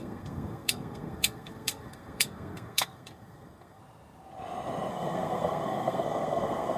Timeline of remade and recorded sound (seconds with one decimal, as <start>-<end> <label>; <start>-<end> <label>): 0.0-3.8 remade; 3.8-4.9 recorded; 4.9-6.8 remade

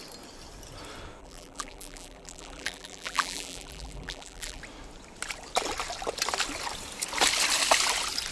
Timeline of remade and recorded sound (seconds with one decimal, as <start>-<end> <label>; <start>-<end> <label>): 0.0-1.2 recorded; 1.2-4.6 remade; 4.6-8.3 recorded

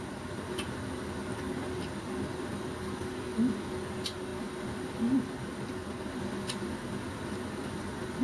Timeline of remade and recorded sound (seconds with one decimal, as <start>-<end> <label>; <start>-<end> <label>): 0.0-8.2 recorded

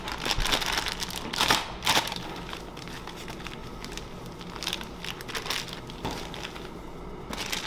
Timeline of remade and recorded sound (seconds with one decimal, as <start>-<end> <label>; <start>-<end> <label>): 0.0-3.6 recorded; 3.6-4.2 remade; 4.2-7.7 recorded